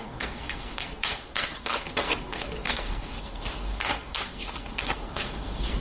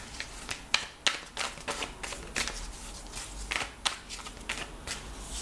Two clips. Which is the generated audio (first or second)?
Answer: first